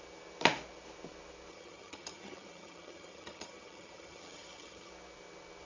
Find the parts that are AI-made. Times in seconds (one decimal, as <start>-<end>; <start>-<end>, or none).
1.5-4.9